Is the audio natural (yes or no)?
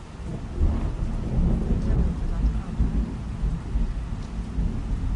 yes